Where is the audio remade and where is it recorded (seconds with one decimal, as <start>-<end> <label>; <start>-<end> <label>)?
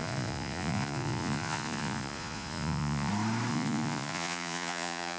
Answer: 0.0-3.1 remade; 3.1-3.5 recorded; 3.5-5.2 remade